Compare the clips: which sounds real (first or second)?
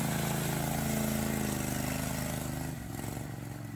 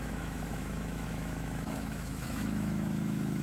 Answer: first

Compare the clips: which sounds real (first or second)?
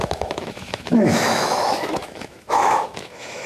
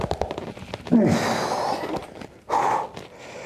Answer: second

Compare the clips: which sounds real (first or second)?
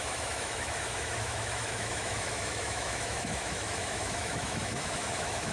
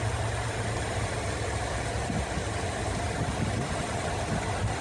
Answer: second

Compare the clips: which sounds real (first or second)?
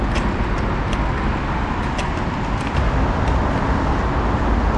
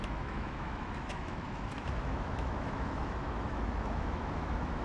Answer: first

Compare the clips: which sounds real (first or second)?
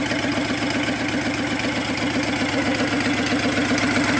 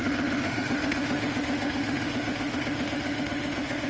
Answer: first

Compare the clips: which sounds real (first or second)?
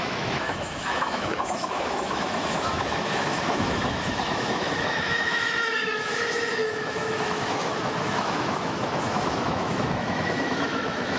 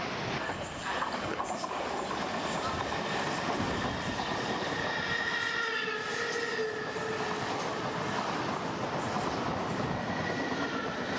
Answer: second